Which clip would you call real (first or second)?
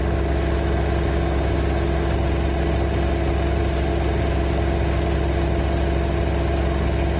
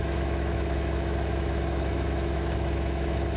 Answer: first